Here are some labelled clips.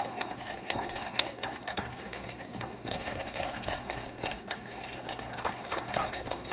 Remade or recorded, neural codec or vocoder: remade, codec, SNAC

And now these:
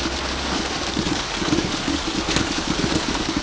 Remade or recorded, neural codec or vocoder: remade, codec, DAC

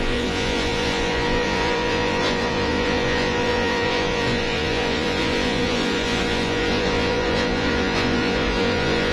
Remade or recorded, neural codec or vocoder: remade, vocoder, Vocos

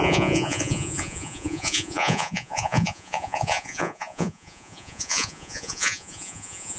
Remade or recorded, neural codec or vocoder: remade, vocoder, Vocos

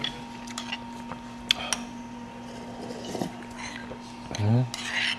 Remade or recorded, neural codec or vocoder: recorded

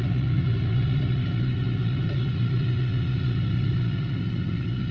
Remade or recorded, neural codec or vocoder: remade, vocoder, Vocos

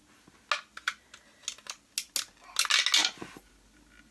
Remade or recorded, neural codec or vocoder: recorded